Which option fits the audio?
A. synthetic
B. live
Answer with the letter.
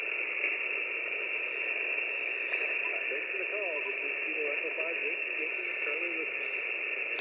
B